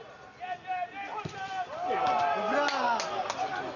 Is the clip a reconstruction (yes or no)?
no